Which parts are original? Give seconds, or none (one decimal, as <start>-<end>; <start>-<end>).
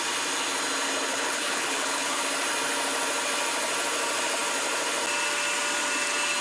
0.0-1.1; 2.2-6.4